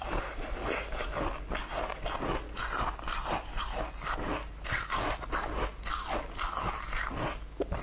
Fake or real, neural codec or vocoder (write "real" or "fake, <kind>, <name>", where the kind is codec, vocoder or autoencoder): real